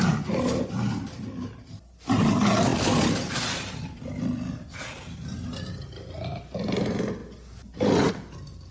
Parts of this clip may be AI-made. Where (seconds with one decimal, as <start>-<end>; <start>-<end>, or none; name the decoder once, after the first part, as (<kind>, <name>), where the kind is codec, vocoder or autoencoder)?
2.7-5.7 (vocoder, BigVGAN v2)

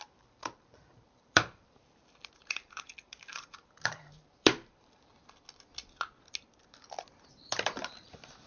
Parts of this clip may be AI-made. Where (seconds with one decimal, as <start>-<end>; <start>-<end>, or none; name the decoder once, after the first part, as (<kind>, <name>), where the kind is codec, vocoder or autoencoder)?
0.0-5.1 (vocoder, BigVGAN v2); 7.3-8.5

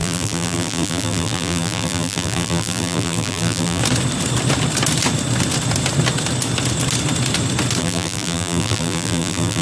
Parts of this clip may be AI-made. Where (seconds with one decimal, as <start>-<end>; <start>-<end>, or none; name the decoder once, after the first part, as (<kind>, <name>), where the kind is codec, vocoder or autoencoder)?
0.0-3.8 (vocoder, BigVGAN v2); 7.8-9.6

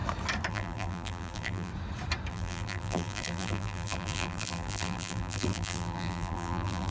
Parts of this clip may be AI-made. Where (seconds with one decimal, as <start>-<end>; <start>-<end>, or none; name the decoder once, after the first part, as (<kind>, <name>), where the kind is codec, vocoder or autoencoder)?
0.5-1.7 (vocoder, BigVGAN v2); 2.3-6.9

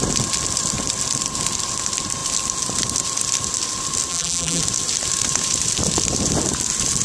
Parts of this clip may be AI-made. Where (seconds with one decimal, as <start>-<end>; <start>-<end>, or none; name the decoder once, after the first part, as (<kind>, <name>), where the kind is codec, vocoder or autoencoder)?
4.1-4.6 (vocoder, BigVGAN v2)